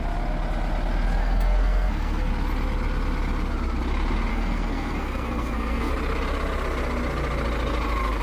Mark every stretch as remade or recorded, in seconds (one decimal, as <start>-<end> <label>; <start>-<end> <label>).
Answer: 0.0-1.2 recorded; 1.2-2.3 remade; 2.3-4.3 recorded; 4.3-5.9 remade; 5.9-8.2 recorded